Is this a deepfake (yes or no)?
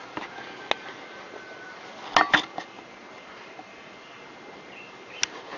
no